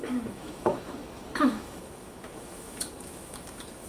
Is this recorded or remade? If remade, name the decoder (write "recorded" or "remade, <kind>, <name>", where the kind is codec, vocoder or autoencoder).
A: remade, autoencoder, DAC-VAE